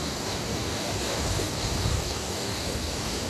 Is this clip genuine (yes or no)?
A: no